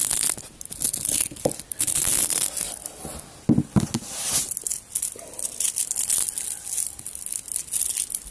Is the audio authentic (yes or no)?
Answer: yes